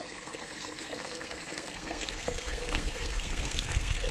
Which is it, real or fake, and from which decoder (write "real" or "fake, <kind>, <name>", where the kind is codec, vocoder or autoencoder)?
fake, codec, SNAC